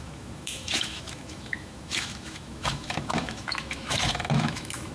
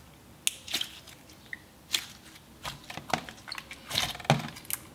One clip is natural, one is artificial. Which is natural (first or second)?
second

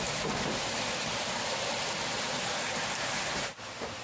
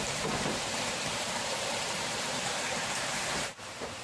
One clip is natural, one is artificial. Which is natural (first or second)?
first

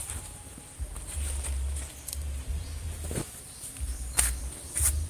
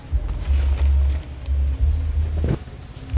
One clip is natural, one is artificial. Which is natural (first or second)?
second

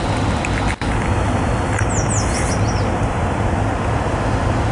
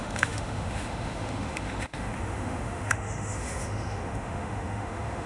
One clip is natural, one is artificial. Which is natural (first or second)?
first